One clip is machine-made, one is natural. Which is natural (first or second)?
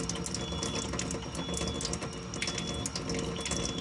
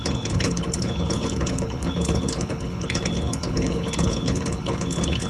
first